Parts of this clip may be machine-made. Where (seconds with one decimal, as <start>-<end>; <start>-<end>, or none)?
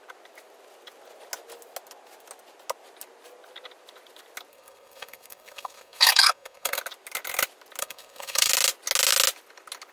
4.5-6.8; 7.8-8.5